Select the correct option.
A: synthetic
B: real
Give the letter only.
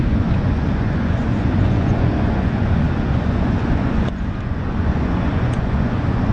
A